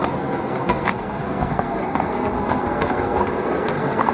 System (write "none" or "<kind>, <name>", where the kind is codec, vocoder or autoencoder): codec, SNAC